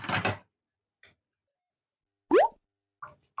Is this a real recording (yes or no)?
yes